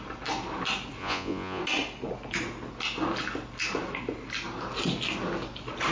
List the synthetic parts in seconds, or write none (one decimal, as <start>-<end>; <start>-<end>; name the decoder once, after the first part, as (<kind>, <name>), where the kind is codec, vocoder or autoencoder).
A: 1.0-1.6 (vocoder, Vocos)